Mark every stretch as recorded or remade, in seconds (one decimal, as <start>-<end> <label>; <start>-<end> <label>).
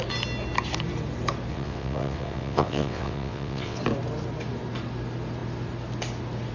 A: 0.0-1.5 recorded; 1.5-3.8 remade; 3.8-6.5 recorded